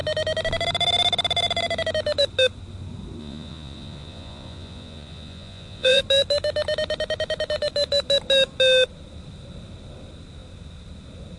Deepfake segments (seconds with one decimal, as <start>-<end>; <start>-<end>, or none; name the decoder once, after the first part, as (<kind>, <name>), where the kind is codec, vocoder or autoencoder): 3.2-6.0 (vocoder, Vocos)